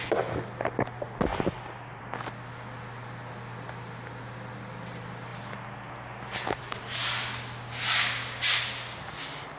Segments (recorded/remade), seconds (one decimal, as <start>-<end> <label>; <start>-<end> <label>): 0.0-9.6 recorded